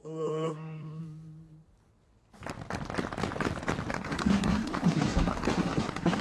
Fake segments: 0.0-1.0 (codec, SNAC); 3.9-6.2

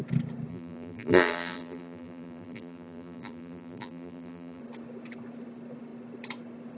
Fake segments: 0.5-4.6 (vocoder, BigVGAN v2)

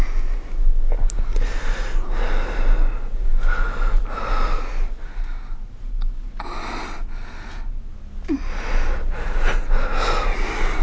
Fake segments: none

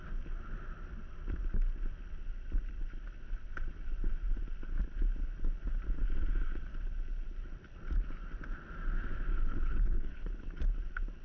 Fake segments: 9.3-10.4 (codec, HILCodec)

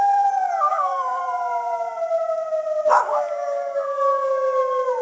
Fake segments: 0.7-1.2 (codec, DAC); 3.0-4.3

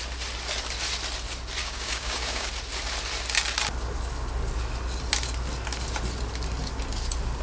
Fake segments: 1.6-2.5 (codec, DAC)

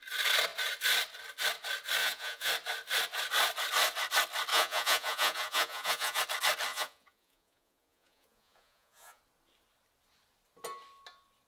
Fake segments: 2.0-2.5 (vocoder, Vocos); 4.5-6.2; 6.7-9.2